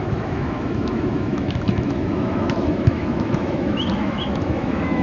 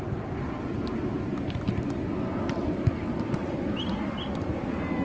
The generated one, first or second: first